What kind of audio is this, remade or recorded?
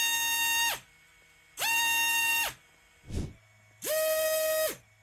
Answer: recorded